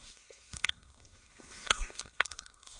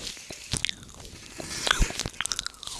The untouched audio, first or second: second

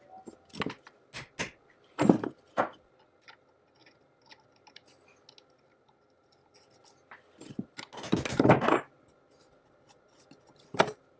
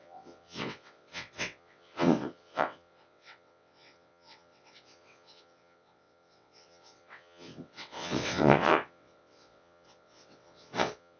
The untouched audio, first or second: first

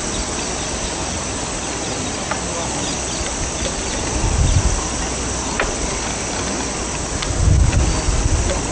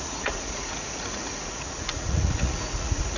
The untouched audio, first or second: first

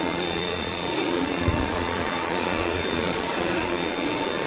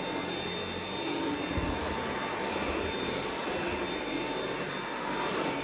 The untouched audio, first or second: second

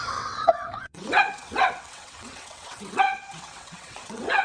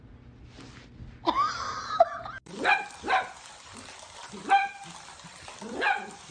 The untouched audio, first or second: second